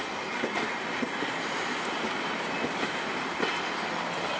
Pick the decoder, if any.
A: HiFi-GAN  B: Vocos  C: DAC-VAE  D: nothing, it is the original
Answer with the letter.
D